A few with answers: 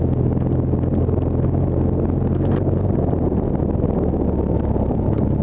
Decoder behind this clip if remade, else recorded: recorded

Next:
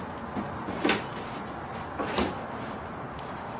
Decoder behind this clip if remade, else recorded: recorded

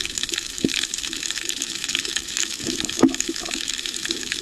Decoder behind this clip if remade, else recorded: remade, autoencoder, DAC-VAE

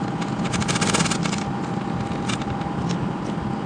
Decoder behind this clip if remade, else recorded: recorded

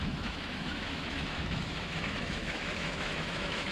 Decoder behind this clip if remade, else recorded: remade, autoencoder, DAC-VAE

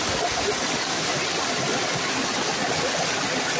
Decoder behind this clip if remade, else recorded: recorded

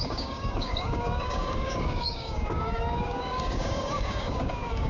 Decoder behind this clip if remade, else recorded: remade, codec, DAC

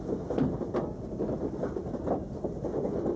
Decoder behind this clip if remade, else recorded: remade, vocoder, BigVGAN v2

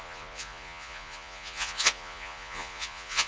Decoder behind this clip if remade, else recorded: remade, vocoder, Vocos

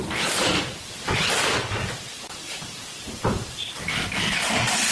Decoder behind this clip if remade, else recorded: recorded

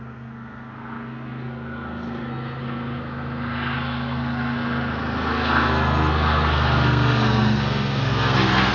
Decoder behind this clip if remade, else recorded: remade, codec, SNAC